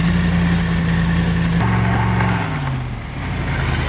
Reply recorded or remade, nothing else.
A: recorded